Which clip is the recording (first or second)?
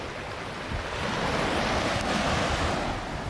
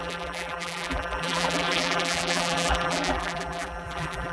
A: first